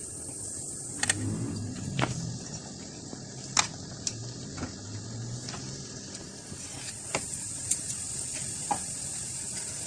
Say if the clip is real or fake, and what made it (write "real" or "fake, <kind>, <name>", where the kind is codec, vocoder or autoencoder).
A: real